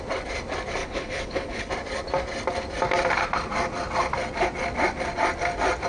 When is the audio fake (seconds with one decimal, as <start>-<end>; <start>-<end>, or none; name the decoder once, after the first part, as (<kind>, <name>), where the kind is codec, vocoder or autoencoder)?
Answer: 0.8-1.7 (codec, HILCodec)